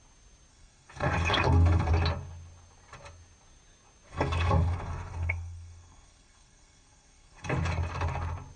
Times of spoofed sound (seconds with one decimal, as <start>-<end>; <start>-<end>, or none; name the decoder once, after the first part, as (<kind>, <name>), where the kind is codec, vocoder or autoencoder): 0.5-1.9 (codec, SNAC); 4.1-7.5